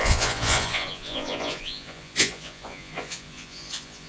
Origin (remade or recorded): remade